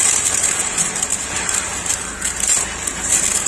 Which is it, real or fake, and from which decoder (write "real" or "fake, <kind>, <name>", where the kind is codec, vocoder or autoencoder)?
real